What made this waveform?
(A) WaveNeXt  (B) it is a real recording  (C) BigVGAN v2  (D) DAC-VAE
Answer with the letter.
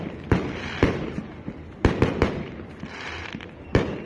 C